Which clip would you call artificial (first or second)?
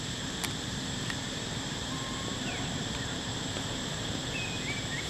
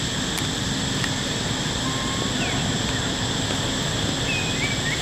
first